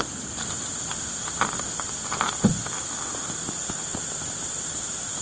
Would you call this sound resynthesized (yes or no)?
no